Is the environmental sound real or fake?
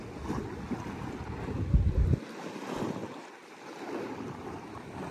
real